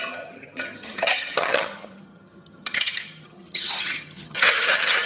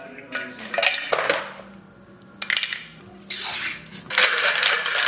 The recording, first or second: second